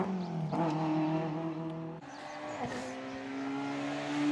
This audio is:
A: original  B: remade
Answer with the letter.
A